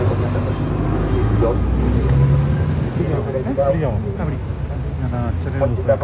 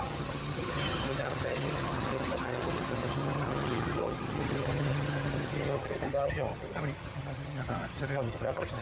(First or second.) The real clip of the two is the first